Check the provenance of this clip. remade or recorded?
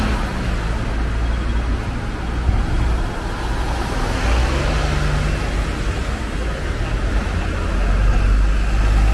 recorded